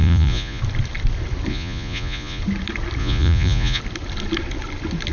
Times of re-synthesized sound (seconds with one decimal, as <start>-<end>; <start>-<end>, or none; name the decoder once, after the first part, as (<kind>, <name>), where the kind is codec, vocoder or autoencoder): 0.0-0.6 (vocoder, Vocos); 1.5-2.4; 3.0-3.8